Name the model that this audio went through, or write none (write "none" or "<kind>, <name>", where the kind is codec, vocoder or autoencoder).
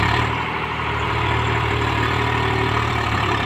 vocoder, BigVGAN v2